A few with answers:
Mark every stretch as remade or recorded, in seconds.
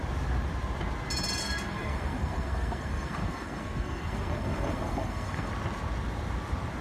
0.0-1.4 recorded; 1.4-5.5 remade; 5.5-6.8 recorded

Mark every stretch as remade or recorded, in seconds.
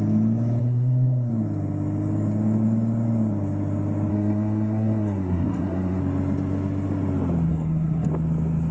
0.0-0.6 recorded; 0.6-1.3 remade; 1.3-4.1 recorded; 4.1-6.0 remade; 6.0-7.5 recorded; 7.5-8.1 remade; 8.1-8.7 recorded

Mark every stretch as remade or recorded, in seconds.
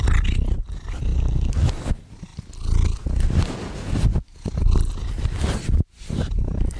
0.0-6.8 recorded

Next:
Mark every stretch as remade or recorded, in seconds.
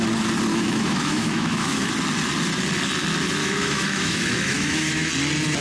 0.0-0.5 recorded; 0.5-1.9 remade; 1.9-3.4 recorded; 3.4-5.1 remade; 5.1-5.6 recorded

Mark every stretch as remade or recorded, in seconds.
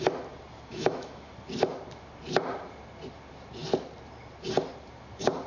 0.0-0.7 recorded; 0.7-1.3 remade; 1.3-5.5 recorded